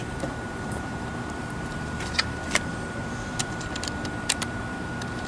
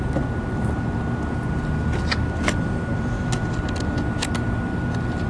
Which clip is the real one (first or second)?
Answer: second